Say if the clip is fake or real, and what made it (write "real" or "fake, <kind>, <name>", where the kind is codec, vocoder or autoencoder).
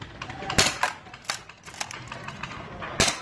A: real